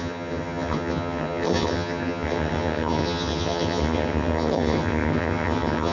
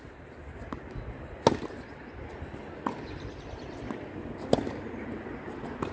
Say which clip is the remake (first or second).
first